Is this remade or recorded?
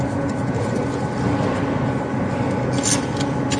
recorded